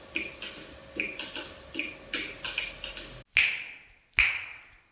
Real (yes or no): yes